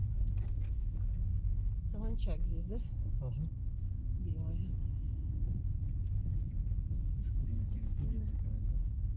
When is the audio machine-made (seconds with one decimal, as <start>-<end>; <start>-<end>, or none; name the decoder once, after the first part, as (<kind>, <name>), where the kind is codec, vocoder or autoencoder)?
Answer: none